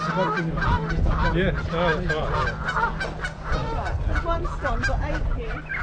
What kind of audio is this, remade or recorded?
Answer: recorded